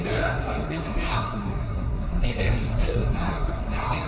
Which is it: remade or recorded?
remade